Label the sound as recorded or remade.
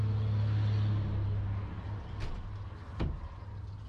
recorded